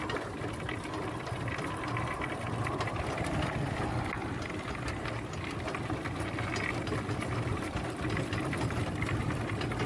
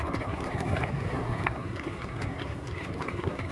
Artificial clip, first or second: second